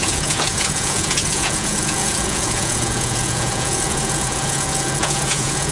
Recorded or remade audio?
remade